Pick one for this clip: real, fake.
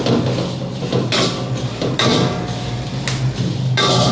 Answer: real